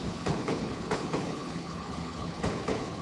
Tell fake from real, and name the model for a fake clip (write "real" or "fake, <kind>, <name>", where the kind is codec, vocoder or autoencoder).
fake, codec, HILCodec